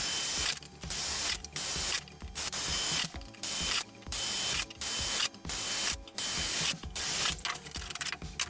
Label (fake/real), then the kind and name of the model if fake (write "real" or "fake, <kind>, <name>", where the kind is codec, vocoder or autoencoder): real